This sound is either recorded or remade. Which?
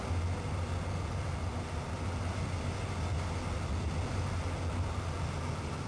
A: recorded